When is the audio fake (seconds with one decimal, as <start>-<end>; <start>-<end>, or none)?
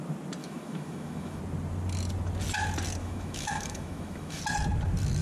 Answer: 0.4-1.4; 3.0-4.4